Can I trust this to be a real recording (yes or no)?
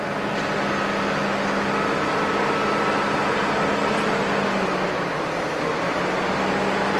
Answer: yes